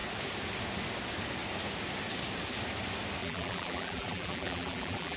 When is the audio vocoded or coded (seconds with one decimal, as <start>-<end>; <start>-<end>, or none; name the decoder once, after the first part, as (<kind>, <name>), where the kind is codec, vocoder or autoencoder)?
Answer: 3.2-5.2 (vocoder, BigVGAN v2)